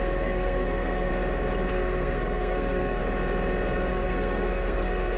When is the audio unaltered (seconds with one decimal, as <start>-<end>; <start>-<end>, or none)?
1.1-1.7; 3.0-3.9

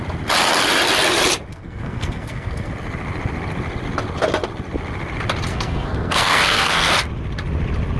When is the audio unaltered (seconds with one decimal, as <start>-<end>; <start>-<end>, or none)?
0.0-1.5; 2.7-5.5; 6.9-8.0

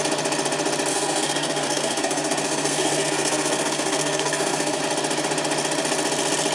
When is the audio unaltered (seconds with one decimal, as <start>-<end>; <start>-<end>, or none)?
0.0-0.9; 4.8-6.5

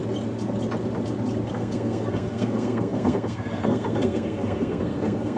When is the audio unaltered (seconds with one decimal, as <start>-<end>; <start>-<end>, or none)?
0.0-1.5

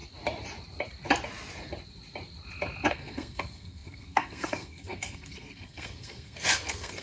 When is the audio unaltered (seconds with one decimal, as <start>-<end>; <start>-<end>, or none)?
0.0-2.9

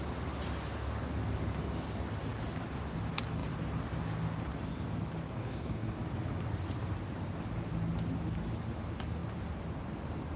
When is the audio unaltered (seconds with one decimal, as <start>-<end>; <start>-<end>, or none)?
0.0-5.4; 6.0-10.4